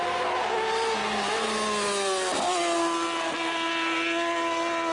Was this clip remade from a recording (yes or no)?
no